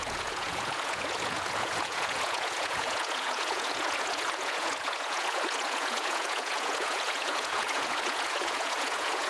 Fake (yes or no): yes